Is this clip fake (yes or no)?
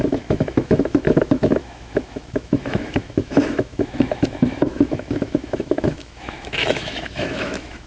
yes